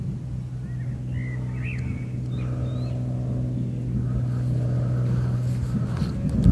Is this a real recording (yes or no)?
yes